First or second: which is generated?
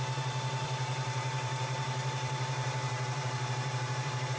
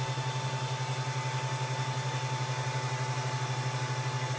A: first